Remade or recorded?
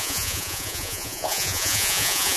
remade